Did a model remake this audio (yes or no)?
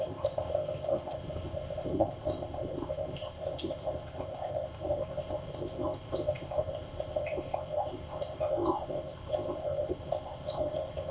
yes